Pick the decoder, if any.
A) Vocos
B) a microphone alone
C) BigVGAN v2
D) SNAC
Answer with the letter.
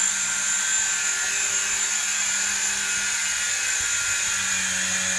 B